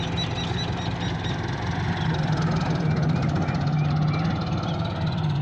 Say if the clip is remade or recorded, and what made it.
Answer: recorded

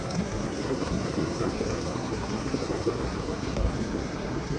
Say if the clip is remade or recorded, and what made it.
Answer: remade, codec, SNAC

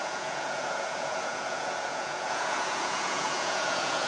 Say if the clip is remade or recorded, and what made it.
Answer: remade, vocoder, Vocos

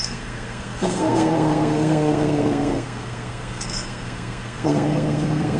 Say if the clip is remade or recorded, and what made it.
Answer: remade, codec, SNAC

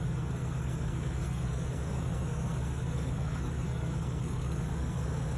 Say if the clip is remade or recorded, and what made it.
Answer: remade, codec, SNAC